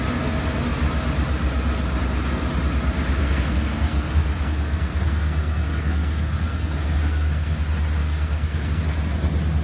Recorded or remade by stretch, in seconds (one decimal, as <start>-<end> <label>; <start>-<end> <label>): 0.0-3.2 recorded; 3.2-7.6 remade; 7.6-8.0 recorded; 8.0-8.8 remade; 8.8-9.6 recorded